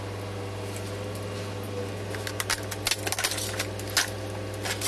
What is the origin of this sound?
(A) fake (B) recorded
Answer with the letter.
B